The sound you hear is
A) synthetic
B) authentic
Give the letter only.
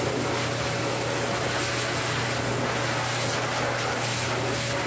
B